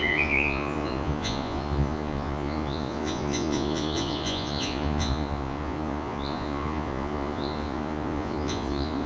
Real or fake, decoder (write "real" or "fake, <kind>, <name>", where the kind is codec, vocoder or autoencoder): fake, vocoder, Vocos